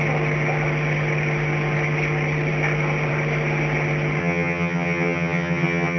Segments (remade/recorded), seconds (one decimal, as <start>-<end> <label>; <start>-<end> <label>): 0.0-4.2 recorded; 4.2-6.0 remade

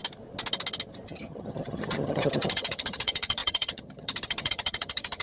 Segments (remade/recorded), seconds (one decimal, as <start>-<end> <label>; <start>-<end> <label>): 0.0-1.1 recorded; 1.1-5.2 remade

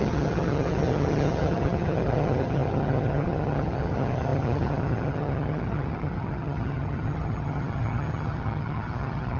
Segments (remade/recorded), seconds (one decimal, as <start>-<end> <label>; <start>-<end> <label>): 0.0-9.4 remade

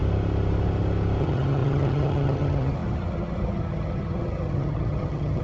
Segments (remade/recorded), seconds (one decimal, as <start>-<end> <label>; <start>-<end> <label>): 0.0-1.2 recorded; 1.2-5.4 remade

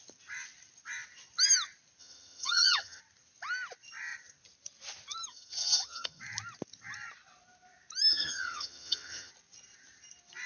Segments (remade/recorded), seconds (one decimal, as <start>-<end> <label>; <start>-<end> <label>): 0.0-2.0 recorded; 2.0-3.0 remade; 3.0-5.3 recorded; 5.3-6.2 remade; 6.2-8.1 recorded; 8.1-9.3 remade; 9.3-10.5 recorded

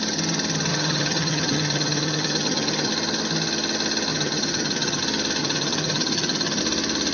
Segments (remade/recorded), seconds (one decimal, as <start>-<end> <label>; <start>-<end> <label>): 0.0-0.7 recorded; 0.7-2.9 remade; 2.9-4.1 recorded; 4.1-5.0 remade; 5.0-5.4 recorded; 5.4-6.6 remade; 6.6-7.1 recorded

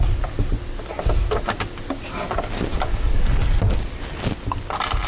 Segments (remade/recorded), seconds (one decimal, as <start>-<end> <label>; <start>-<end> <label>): 0.0-5.1 recorded